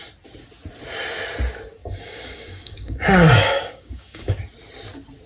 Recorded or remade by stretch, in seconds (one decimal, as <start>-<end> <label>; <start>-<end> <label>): 0.0-1.8 recorded; 1.8-4.4 remade; 4.4-5.3 recorded

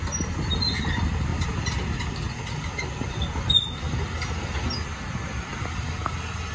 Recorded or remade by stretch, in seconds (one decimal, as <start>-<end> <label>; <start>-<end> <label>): 0.0-1.3 recorded; 1.3-2.0 remade; 2.0-6.5 recorded

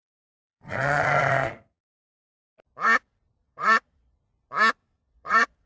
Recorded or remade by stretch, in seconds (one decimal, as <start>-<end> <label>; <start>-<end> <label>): 0.0-2.5 remade; 2.5-3.4 recorded; 3.4-4.2 remade; 4.2-4.8 recorded; 4.8-5.7 remade

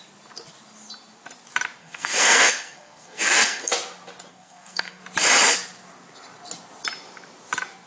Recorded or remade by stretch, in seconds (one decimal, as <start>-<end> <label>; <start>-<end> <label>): 0.0-1.8 recorded; 1.8-3.7 remade; 3.7-4.3 recorded; 4.3-5.0 remade; 5.0-7.9 recorded

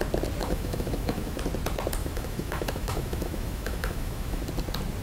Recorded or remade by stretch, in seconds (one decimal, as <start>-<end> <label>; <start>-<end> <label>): 0.0-0.4 recorded; 0.4-1.4 remade; 1.4-2.0 recorded; 2.0-4.4 remade; 4.4-5.0 recorded